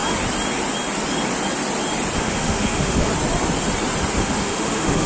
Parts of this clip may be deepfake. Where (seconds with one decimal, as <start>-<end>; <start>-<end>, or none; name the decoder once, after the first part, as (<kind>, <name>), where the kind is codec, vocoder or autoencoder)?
2.2-3.1 (autoencoder, DAC-VAE); 4.2-5.1